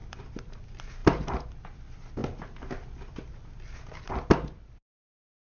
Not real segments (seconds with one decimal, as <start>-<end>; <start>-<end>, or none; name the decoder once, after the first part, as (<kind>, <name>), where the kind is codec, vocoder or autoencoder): 0.0-0.6 (vocoder, BigVGAN v2); 1.0-1.6